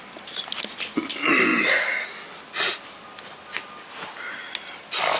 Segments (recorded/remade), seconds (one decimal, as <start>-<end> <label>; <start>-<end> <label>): 0.0-5.2 recorded